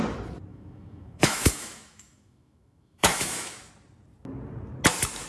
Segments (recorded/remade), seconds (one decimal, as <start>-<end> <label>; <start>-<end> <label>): 0.0-0.5 recorded; 0.5-3.7 remade; 3.7-5.3 recorded